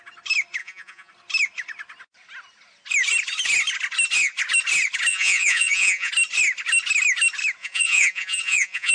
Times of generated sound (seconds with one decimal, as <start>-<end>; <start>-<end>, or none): 0.6-1.1; 5.1-6.1; 7.6-8.9